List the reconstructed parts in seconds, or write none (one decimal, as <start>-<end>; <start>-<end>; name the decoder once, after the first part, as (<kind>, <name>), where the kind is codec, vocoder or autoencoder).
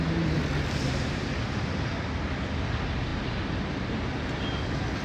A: none